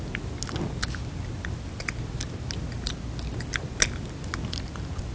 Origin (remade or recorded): recorded